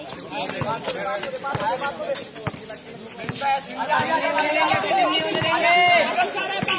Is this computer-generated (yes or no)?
no